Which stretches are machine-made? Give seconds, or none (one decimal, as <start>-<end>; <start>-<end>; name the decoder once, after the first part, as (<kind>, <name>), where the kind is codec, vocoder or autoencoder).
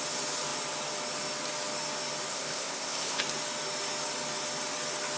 2.3-3.2 (codec, ZipCodec)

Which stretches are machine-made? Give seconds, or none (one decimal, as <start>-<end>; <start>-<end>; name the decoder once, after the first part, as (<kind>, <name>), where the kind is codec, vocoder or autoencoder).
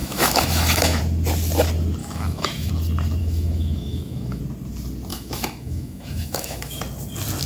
0.0-1.0 (autoencoder, DAC-VAE); 2.0-2.7; 3.2-4.4; 5.1-6.8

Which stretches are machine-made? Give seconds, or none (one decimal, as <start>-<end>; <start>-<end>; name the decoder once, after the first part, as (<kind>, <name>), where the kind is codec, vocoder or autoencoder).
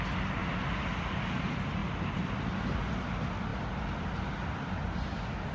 0.4-1.0 (vocoder, BigVGAN v2)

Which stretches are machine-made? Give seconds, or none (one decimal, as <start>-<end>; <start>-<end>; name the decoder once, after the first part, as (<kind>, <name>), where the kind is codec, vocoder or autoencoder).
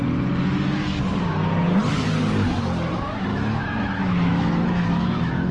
3.3-5.5 (autoencoder, DAC-VAE)